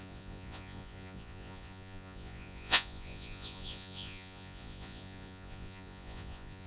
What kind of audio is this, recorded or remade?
remade